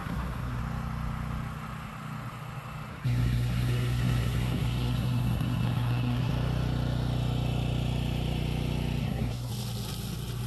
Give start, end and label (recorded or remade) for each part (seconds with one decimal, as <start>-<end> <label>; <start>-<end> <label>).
0.0-0.6 remade; 0.6-2.9 recorded; 2.9-6.3 remade; 6.3-9.0 recorded; 9.0-9.5 remade; 9.5-10.5 recorded